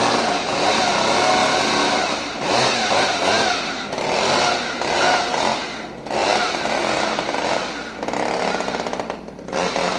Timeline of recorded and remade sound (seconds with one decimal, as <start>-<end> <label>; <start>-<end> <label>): 0.0-1.4 recorded; 1.4-3.2 remade; 3.2-10.0 recorded